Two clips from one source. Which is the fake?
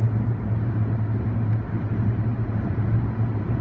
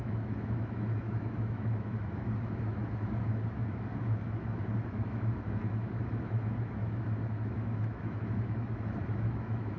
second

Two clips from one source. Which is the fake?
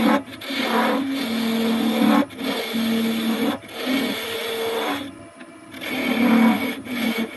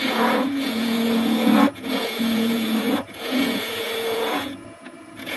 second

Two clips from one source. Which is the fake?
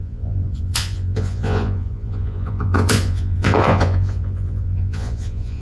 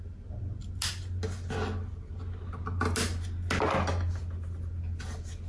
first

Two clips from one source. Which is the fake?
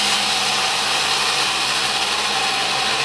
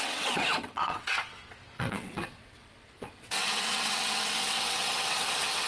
second